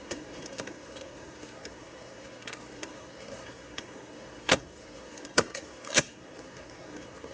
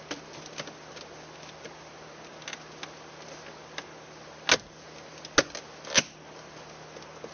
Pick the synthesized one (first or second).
first